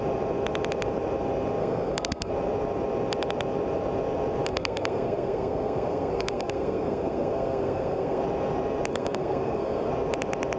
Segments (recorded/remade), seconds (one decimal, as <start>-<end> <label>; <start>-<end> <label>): 0.0-1.6 recorded; 1.6-2.3 remade; 2.3-4.5 recorded; 4.5-8.2 remade; 8.2-8.9 recorded; 8.9-9.9 remade; 9.9-10.6 recorded